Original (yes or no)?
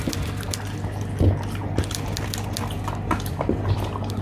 yes